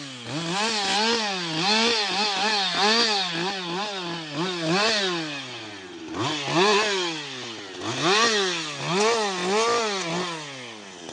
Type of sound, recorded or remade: recorded